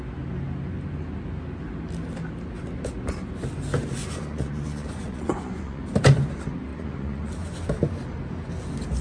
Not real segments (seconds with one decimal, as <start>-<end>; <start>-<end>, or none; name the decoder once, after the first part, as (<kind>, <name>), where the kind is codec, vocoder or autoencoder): 4.0-5.8 (vocoder, Vocos); 6.7-7.3